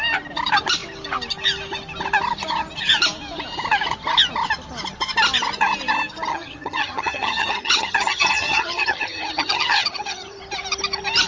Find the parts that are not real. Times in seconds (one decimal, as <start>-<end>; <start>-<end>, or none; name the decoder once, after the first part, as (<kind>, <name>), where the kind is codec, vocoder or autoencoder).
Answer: 6.3-10.4 (vocoder, HiFi-GAN)